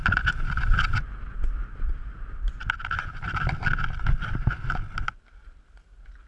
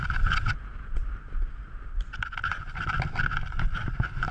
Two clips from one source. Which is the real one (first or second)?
first